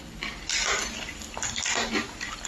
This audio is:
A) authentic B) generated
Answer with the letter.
A